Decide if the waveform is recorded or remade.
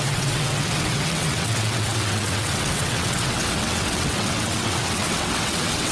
remade